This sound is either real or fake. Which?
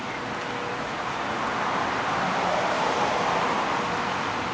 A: real